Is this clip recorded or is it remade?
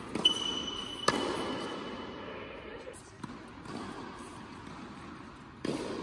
recorded